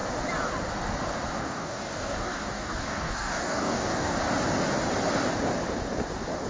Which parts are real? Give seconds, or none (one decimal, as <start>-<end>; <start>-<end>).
0.0-1.4; 4.1-6.5